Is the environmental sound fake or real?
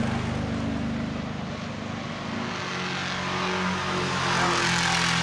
real